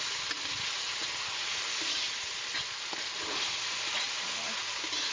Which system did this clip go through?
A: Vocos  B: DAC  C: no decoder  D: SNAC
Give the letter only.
C